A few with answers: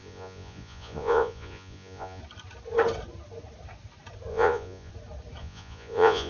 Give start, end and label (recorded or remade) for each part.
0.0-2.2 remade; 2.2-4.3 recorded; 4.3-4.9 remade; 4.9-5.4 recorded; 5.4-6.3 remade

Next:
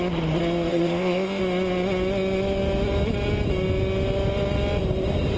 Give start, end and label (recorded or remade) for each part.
0.0-0.7 recorded; 0.7-1.4 remade; 1.4-5.4 recorded

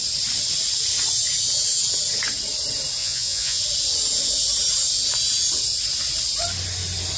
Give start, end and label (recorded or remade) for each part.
0.0-3.0 recorded; 3.0-3.6 remade; 3.6-7.2 recorded